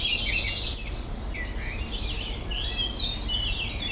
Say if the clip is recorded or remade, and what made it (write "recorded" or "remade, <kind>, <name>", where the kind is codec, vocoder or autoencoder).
recorded